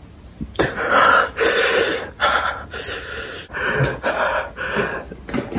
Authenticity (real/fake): real